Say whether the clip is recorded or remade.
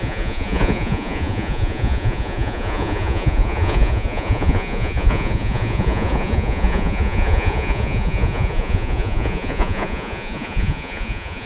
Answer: remade